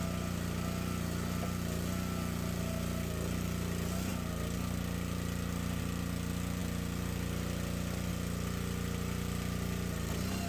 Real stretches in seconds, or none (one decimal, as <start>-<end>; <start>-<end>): 0.0-10.5